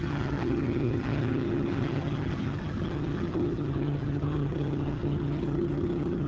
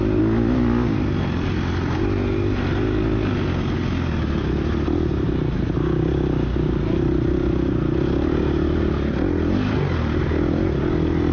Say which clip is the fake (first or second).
first